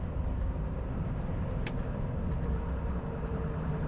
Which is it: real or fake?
fake